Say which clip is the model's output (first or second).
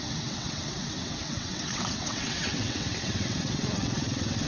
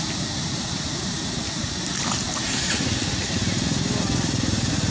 first